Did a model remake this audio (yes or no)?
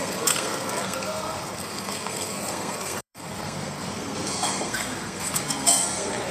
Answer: yes